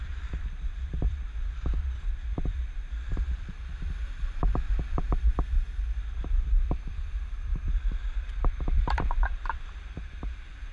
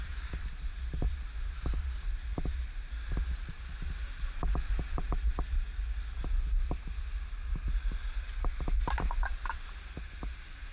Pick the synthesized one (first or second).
first